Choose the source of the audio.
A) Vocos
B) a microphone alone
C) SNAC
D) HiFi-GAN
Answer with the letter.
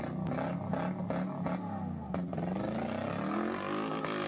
B